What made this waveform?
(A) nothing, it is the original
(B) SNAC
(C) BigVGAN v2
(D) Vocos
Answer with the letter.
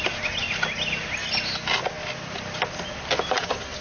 A